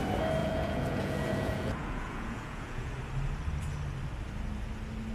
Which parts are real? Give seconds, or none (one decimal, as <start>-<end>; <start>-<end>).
0.0-0.4; 2.9-5.1